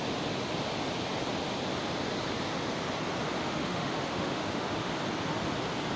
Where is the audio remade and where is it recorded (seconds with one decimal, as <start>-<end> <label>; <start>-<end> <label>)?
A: 0.0-3.4 recorded; 3.4-4.9 remade; 4.9-6.0 recorded